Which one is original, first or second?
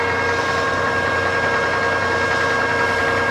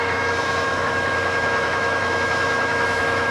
first